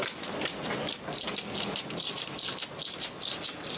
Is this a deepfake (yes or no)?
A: no